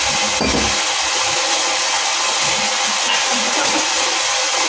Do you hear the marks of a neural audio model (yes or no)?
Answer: no